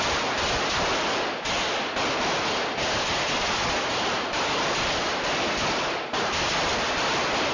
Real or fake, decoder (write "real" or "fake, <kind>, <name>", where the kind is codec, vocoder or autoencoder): real